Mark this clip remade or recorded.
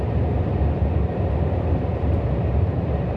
remade